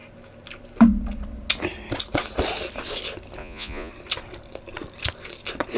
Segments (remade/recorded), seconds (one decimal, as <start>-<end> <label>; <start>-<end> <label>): 0.0-3.4 recorded; 3.4-3.9 remade; 3.9-5.8 recorded